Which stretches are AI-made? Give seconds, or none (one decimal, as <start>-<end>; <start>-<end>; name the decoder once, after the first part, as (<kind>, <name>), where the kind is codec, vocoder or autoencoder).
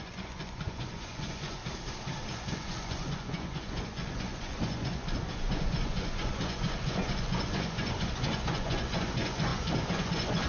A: 0.0-1.6 (vocoder, Vocos); 2.3-10.5